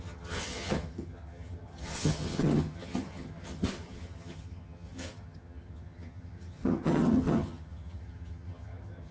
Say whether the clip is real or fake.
fake